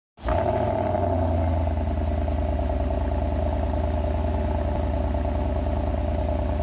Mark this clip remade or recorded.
recorded